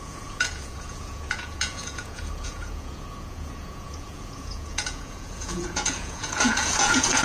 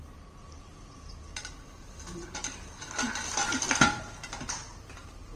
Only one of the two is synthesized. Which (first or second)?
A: first